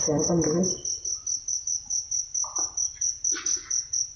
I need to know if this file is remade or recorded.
recorded